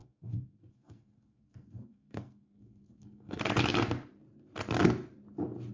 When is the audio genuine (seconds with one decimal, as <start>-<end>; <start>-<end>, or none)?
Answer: 3.4-5.7